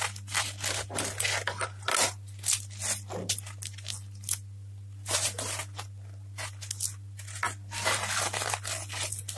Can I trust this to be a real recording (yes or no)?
yes